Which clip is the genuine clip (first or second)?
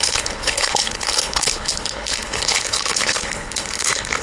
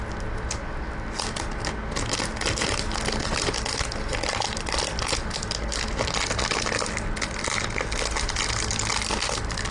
second